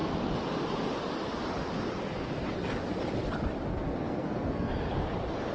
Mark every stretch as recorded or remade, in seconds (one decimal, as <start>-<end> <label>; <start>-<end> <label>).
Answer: 0.0-3.7 recorded; 3.7-4.7 remade; 4.7-5.5 recorded